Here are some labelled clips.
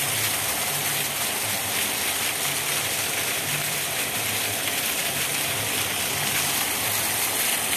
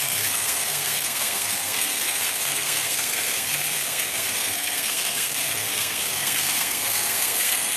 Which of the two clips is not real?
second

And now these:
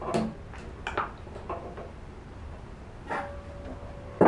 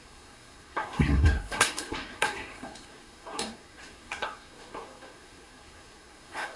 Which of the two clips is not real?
second